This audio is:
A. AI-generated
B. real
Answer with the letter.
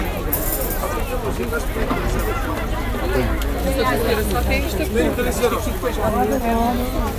B